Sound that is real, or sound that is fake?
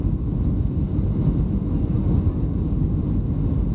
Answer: real